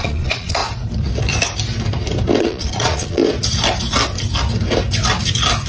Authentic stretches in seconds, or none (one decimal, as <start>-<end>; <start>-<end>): 0.6-2.4; 3.2-5.7